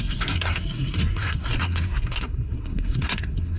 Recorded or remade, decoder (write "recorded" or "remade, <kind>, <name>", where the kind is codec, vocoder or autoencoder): remade, codec, SNAC